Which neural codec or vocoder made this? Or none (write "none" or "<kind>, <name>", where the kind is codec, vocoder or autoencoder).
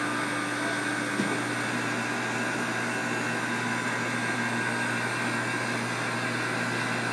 none